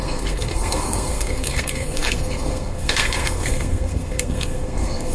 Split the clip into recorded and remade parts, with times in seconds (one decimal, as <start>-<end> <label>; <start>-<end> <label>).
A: 0.0-5.1 remade